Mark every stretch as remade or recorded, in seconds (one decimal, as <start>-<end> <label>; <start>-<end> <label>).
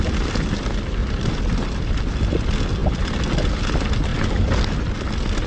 0.0-1.0 recorded; 1.0-2.0 remade; 2.0-5.5 recorded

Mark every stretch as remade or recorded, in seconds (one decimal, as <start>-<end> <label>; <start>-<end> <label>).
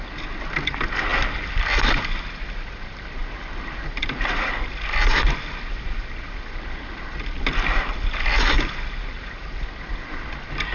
0.0-1.1 recorded; 1.1-1.8 remade; 1.8-10.7 recorded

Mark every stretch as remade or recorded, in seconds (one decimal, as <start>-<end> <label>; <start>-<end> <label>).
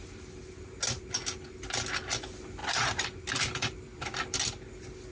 0.0-2.6 recorded; 2.6-4.2 remade; 4.2-5.1 recorded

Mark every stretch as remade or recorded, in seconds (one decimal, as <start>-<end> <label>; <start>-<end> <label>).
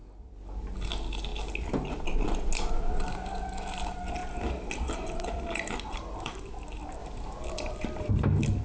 0.0-8.6 recorded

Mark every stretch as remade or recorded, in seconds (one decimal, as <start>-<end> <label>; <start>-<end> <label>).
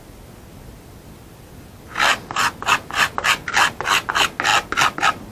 0.0-5.3 recorded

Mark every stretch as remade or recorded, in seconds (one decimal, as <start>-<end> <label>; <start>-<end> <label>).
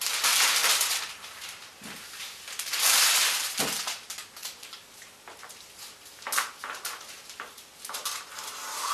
0.0-0.6 recorded; 0.6-3.6 remade; 3.6-8.9 recorded